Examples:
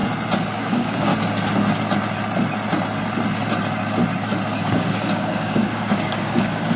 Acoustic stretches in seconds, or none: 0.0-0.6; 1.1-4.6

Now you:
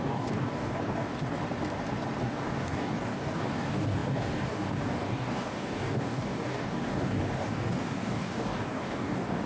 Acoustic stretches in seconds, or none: 1.4-2.2

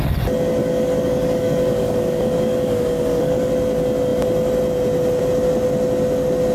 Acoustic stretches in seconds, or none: 0.0-0.6; 3.5-6.5

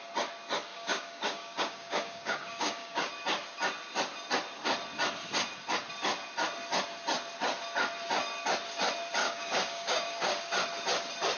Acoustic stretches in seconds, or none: 0.0-0.7; 3.1-9.2; 10.4-11.4

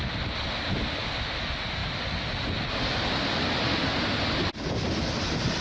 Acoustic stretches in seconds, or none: 0.0-5.6

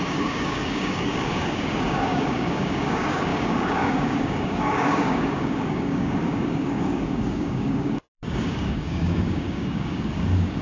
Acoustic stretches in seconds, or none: none

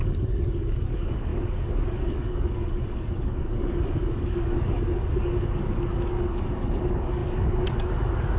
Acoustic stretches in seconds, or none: none

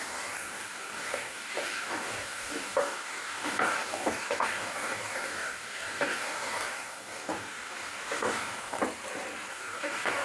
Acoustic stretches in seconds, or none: 8.8-9.5